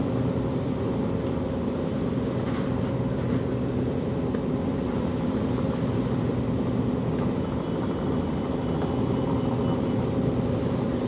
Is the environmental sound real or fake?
fake